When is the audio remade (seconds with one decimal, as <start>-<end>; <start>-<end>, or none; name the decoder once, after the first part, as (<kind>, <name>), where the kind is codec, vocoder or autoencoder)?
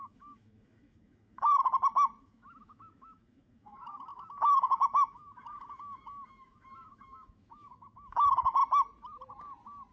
0.0-1.5 (autoencoder, DAC-VAE); 2.2-8.6